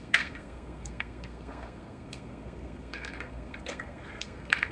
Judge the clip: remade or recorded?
remade